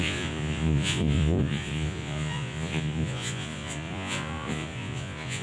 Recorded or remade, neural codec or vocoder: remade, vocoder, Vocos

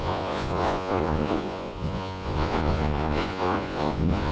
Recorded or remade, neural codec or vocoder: remade, vocoder, Vocos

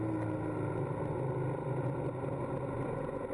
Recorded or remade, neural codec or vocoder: recorded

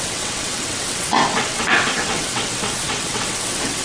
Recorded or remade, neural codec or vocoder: remade, vocoder, WaveNeXt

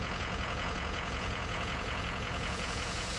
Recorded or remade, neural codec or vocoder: remade, vocoder, Vocos